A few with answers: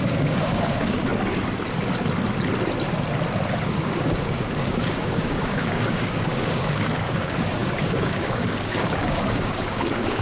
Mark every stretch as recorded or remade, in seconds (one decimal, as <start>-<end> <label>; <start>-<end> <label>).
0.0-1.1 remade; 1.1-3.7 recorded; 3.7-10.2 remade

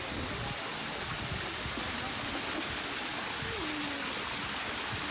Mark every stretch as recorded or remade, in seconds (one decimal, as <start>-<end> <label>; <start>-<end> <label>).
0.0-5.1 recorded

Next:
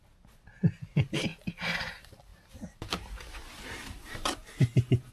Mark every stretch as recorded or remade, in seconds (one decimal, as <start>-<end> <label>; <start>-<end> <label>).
0.0-2.3 recorded; 2.3-5.1 remade